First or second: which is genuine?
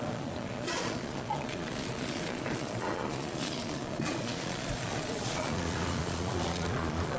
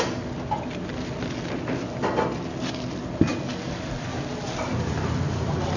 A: second